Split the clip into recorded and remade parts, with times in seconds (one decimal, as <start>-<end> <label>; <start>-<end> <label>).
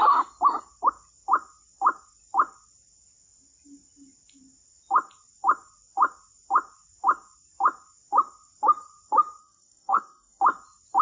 0.0-9.4 recorded; 9.4-10.4 remade; 10.4-11.0 recorded